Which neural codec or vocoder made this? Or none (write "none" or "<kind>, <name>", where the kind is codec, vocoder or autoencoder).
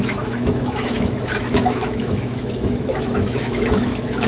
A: autoencoder, DAC-VAE